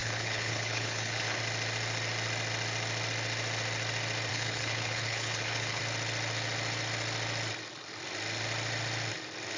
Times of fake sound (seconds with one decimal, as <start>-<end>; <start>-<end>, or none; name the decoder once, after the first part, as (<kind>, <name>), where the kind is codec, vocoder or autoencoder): 0.0-1.4 (codec, HILCodec); 4.3-5.8